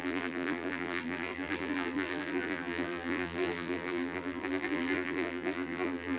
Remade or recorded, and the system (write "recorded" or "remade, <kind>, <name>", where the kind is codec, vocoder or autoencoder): remade, vocoder, BigVGAN v2